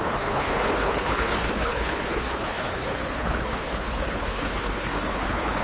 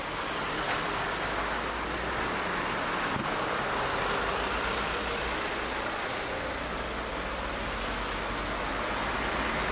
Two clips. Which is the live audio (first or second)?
second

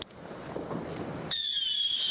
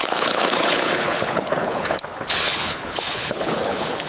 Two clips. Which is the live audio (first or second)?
first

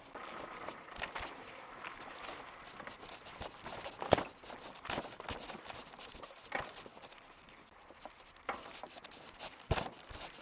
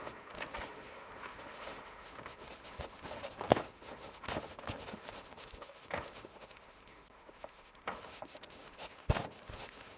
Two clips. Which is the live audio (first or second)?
first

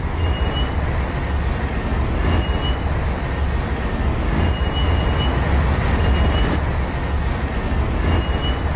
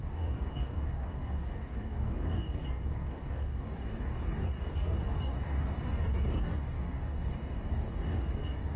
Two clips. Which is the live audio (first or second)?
first